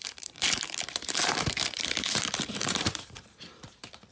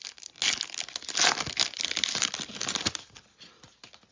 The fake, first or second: first